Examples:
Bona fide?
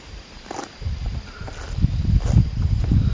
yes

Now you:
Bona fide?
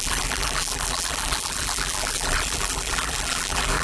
no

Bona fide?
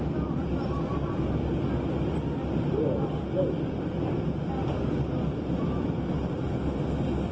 yes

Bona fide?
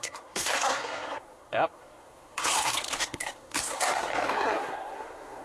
no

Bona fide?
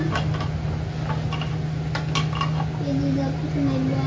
yes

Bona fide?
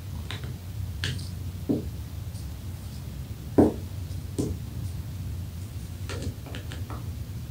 yes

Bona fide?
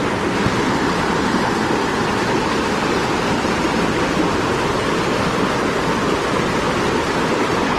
yes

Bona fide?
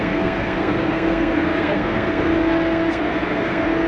no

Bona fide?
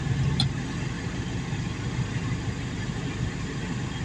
yes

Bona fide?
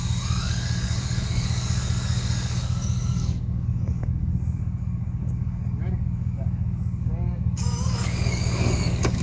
no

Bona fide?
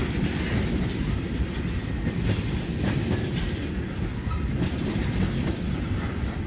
yes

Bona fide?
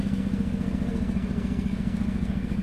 no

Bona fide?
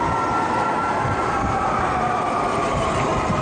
yes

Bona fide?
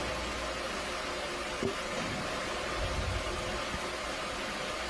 yes